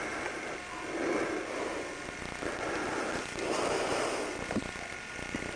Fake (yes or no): no